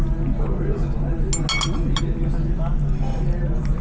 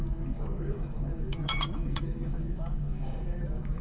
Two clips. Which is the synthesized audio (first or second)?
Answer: second